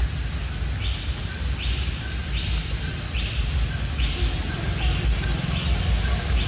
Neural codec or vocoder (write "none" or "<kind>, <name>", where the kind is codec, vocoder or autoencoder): none